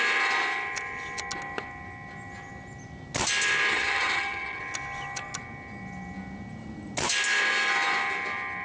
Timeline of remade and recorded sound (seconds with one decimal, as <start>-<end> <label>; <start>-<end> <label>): 0.0-3.7 recorded; 3.7-4.6 remade; 4.6-8.6 recorded